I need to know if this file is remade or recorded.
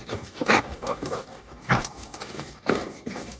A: remade